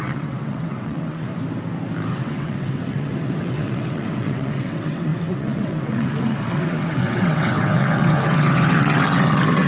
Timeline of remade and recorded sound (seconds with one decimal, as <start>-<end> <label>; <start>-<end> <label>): 0.0-1.3 remade; 1.3-2.1 recorded; 2.1-9.7 remade